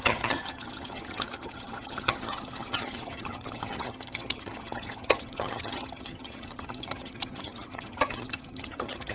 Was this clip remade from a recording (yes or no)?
yes